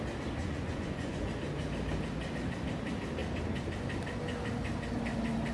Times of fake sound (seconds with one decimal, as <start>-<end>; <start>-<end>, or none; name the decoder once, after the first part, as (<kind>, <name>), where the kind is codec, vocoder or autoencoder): 0.4-1.3 (vocoder, Vocos)